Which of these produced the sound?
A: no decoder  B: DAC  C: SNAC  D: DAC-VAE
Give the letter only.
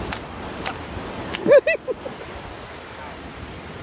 A